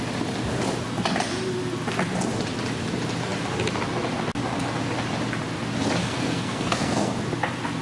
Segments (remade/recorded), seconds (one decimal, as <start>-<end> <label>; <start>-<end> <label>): 0.0-6.0 recorded; 6.0-7.2 remade; 7.2-7.8 recorded